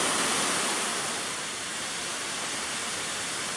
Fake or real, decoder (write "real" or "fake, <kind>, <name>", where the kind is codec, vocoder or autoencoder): real